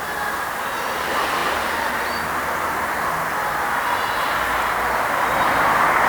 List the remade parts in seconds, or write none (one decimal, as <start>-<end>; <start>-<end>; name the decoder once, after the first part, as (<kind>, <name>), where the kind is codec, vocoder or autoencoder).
none